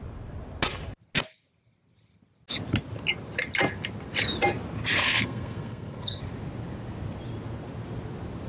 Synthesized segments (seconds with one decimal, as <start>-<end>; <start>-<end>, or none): 5.0-6.2